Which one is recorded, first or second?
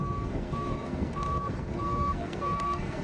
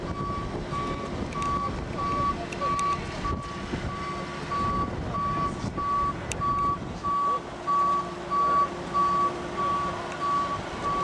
second